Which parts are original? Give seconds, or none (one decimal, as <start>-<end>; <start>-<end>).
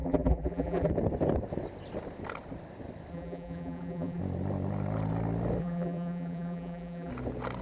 0.9-3.1; 4.2-5.6; 7.1-7.6